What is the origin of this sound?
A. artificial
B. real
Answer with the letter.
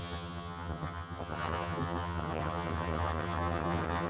A